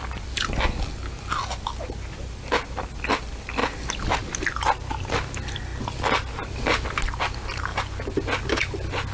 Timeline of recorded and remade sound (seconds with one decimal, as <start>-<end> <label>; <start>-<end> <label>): 0.0-9.1 recorded